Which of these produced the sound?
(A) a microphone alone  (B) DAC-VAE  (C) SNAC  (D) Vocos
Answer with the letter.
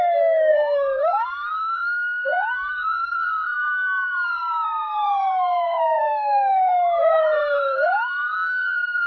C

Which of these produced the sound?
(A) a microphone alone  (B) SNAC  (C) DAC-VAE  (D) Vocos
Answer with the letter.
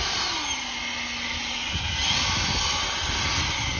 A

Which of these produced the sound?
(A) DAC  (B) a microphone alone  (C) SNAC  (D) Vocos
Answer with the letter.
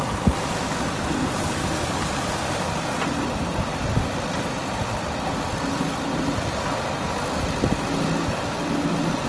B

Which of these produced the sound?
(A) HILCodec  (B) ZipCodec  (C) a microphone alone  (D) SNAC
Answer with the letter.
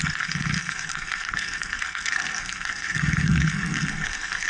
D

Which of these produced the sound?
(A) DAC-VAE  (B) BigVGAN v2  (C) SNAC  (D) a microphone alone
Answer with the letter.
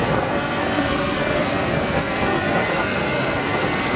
C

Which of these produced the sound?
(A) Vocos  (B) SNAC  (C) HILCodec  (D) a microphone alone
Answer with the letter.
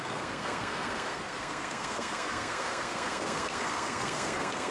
B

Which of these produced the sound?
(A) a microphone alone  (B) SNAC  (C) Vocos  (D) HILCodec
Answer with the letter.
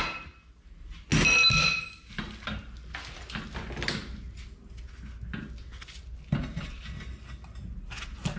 A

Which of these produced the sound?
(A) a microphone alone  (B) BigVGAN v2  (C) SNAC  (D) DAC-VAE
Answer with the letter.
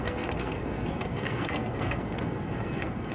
C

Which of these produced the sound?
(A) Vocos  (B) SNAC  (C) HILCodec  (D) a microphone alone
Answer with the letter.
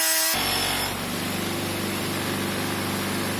D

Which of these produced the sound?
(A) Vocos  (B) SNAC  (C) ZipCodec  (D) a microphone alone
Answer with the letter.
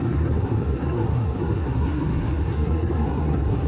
B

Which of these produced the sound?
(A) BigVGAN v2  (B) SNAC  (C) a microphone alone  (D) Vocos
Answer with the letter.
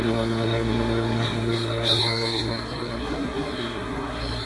B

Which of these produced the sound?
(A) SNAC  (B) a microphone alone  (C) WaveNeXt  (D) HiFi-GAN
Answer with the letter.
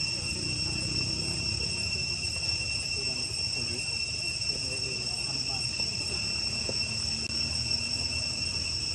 B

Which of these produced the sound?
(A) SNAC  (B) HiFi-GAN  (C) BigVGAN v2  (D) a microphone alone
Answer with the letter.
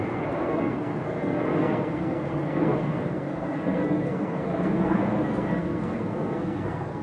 A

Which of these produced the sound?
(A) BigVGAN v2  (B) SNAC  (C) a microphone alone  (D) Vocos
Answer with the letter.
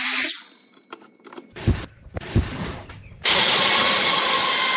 C